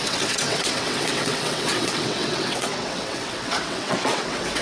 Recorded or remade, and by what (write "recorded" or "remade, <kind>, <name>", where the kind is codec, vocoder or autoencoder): remade, vocoder, WaveNeXt